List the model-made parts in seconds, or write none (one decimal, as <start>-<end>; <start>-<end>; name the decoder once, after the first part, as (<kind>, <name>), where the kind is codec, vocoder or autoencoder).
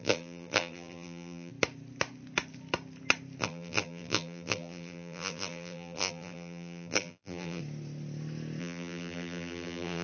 0.0-1.5 (vocoder, BigVGAN v2); 3.4-7.6; 8.6-10.0